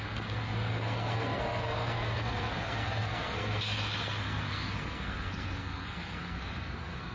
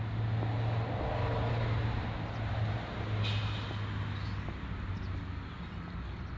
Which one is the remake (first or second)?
first